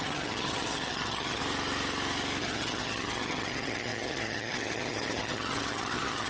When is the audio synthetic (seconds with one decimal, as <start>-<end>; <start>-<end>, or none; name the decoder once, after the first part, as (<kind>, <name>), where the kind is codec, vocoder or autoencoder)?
0.0-1.4 (vocoder, HiFi-GAN); 2.4-6.3